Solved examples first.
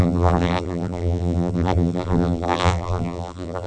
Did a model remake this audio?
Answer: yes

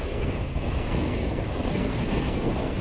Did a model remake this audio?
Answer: yes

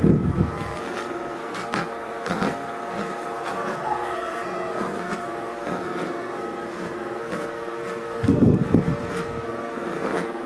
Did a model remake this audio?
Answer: yes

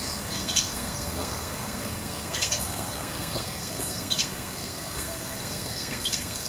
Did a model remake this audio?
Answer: yes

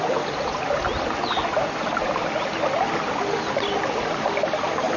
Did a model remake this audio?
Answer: no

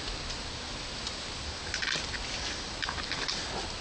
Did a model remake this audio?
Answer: no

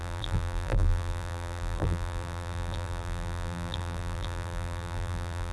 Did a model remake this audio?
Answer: yes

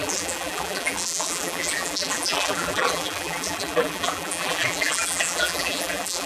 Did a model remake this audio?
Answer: yes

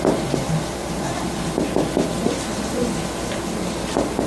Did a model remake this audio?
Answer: yes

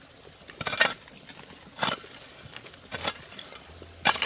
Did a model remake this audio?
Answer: no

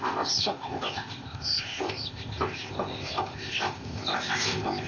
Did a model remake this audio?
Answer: yes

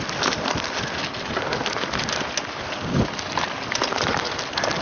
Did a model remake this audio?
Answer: no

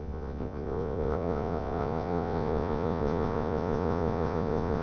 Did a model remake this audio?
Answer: yes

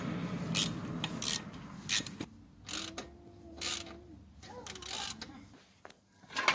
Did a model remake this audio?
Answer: no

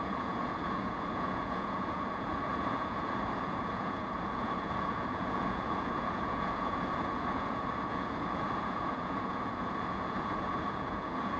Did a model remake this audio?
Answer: yes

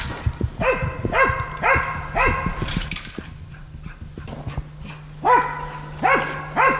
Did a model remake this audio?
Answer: no